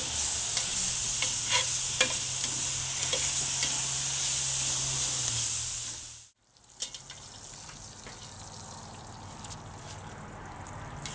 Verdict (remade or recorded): recorded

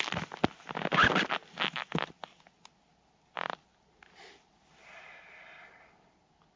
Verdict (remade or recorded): recorded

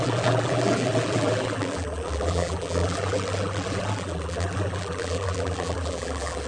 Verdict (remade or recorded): remade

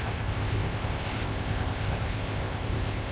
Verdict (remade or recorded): remade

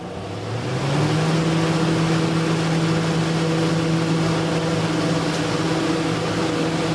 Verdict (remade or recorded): recorded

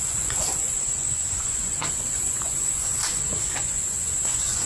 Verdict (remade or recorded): remade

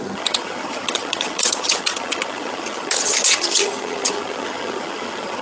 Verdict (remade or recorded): remade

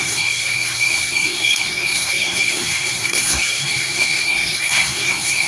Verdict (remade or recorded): remade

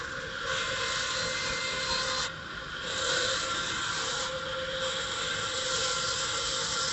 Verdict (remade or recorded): recorded